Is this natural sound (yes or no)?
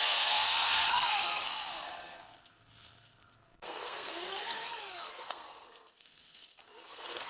no